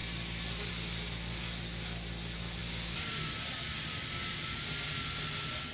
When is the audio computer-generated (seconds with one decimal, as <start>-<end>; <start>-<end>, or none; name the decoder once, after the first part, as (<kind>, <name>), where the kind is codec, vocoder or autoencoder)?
none